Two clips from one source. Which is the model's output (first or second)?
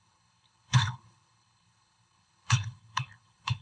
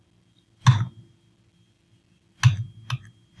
first